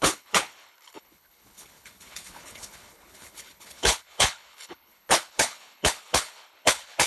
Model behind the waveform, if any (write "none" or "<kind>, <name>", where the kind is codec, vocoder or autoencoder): codec, HILCodec